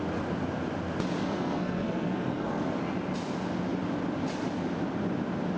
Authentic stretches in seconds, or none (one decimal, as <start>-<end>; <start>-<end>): 0.0-1.2; 2.8-5.6